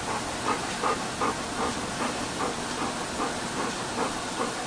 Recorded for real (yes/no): yes